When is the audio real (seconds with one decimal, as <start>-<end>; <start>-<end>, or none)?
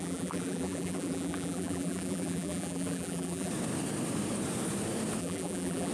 3.5-5.2